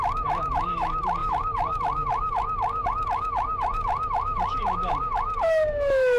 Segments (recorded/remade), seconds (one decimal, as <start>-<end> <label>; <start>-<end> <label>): 0.0-6.2 remade